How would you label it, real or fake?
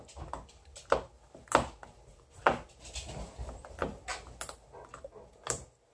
real